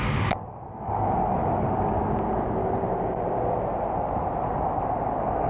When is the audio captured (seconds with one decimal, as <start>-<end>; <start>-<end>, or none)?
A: 0.0-5.5